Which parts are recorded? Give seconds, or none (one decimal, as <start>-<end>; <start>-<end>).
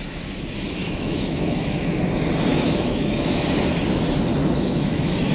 0.0-0.8; 2.0-2.5; 3.4-4.4